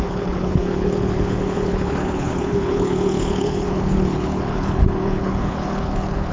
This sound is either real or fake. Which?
fake